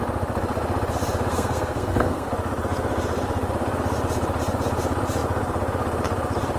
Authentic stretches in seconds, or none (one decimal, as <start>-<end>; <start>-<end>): 0.0-1.3; 2.3-6.6